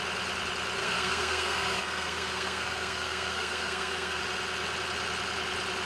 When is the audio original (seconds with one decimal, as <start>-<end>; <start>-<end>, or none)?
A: 0.0-0.8; 4.2-5.8

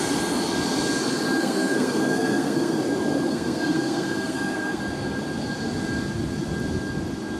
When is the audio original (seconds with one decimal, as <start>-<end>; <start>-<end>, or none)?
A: 0.0-1.4; 2.8-3.3; 4.8-7.4

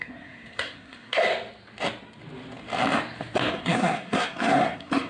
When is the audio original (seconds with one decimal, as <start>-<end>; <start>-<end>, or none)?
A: 1.2-3.5

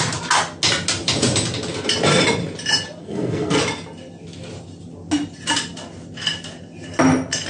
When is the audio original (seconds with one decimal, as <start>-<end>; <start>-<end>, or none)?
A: 0.0-3.0; 3.6-7.5

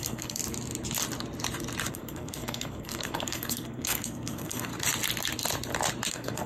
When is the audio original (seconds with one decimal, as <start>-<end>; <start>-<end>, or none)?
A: 0.4-1.9; 4.7-6.1